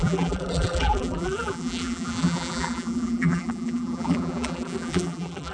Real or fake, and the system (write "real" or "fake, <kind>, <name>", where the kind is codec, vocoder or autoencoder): fake, vocoder, BigVGAN v2